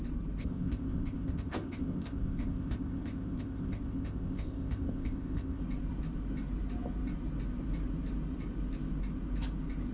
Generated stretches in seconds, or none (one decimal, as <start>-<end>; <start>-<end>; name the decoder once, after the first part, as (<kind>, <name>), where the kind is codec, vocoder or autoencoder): 0.4-5.6 (codec, ZipCodec)